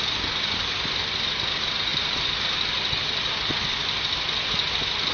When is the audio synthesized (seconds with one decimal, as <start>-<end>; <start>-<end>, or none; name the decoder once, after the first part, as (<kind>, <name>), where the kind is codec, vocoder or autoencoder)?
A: none